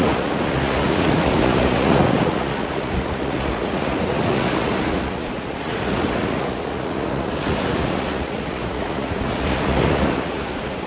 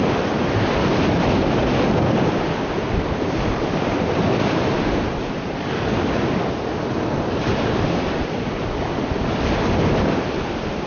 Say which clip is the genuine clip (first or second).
second